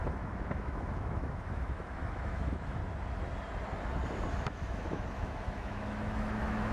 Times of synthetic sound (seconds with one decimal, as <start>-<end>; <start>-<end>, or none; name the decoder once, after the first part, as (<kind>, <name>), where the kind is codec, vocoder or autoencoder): 0.0-2.8 (autoencoder, DAC-VAE); 4.3-6.7